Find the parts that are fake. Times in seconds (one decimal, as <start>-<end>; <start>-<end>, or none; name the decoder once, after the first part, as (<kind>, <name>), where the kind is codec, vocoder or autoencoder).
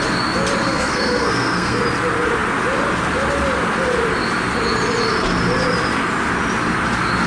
0.6-1.8 (codec, SNAC)